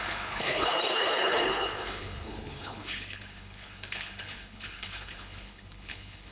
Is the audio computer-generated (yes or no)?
yes